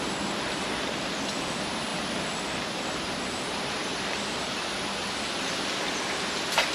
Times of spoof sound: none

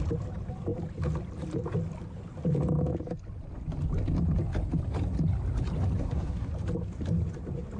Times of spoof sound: 6.0-6.5

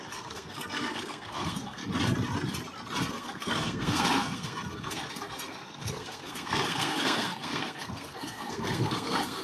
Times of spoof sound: 0.0-1.8; 3.1-9.4

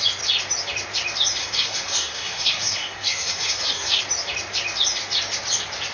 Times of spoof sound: 1.4-4.0